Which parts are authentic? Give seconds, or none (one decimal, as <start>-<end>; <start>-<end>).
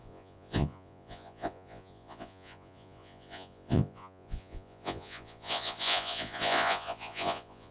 none